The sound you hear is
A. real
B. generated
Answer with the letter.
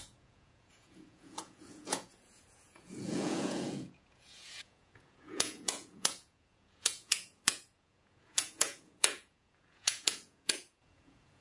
B